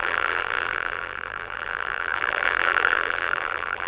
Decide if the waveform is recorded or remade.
remade